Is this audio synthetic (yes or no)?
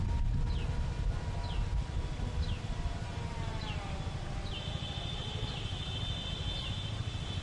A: no